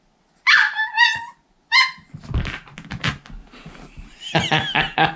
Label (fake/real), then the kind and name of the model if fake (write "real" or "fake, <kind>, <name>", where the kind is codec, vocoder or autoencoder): real